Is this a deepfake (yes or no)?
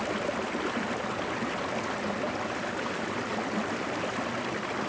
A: no